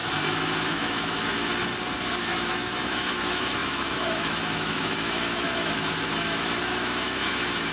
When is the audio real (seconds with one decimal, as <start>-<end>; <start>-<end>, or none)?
0.0-0.7; 1.5-2.2